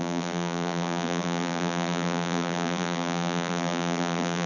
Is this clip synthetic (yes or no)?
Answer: yes